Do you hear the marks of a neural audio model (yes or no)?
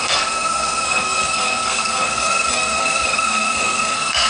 yes